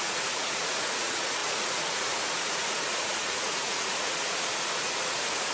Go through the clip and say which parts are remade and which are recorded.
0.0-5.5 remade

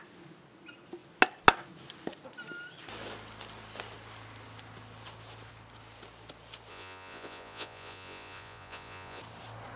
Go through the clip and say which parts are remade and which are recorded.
0.0-6.7 recorded; 6.7-9.2 remade; 9.2-9.8 recorded

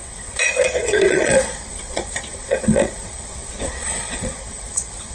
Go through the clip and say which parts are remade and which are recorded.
0.0-5.1 remade

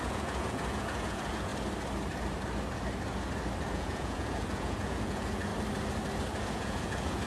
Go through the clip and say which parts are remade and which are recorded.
0.0-1.5 remade; 1.5-3.7 recorded; 3.7-5.5 remade; 5.5-6.4 recorded; 6.4-7.3 remade

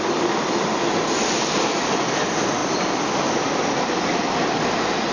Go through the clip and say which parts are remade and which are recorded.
0.0-5.1 recorded

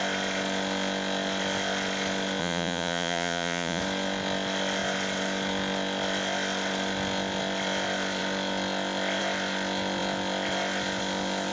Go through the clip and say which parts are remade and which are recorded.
0.0-2.4 recorded; 2.4-3.8 remade; 3.8-11.5 recorded

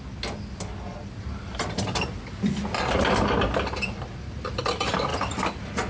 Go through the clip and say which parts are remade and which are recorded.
0.0-5.9 recorded

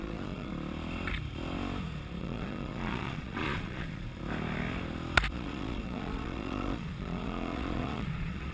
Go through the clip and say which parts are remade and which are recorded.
0.0-0.5 remade; 0.5-2.2 recorded; 2.2-4.1 remade; 4.1-5.3 recorded; 5.3-8.5 remade